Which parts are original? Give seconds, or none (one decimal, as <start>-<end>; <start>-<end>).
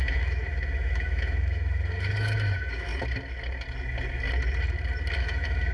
2.9-5.2